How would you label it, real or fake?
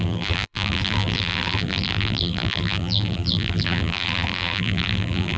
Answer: fake